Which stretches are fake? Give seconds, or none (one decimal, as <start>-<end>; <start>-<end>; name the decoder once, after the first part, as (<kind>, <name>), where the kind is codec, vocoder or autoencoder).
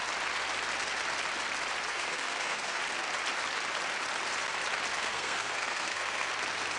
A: 1.9-2.8 (codec, SNAC); 4.9-6.3